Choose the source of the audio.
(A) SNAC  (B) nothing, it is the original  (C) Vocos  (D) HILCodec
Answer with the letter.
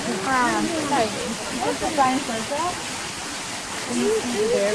B